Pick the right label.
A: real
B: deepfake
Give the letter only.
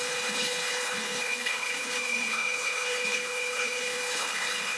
B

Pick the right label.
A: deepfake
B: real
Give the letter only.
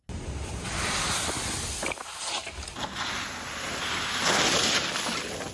B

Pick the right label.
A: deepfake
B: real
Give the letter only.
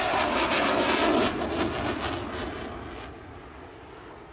B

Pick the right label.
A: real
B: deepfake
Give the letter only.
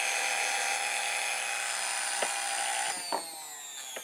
A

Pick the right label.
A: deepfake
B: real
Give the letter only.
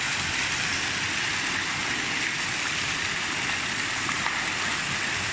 B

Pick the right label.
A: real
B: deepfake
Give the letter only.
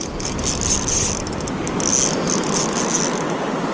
A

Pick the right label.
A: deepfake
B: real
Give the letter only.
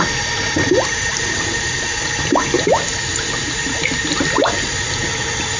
B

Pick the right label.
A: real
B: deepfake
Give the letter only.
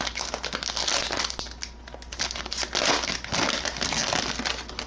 A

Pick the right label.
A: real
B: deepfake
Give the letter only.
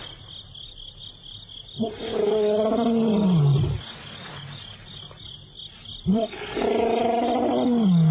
A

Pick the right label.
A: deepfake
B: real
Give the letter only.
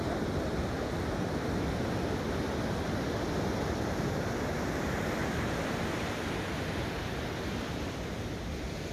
B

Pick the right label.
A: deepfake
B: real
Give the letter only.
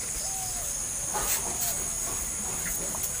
B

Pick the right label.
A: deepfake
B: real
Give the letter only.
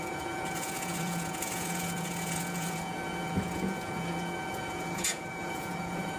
A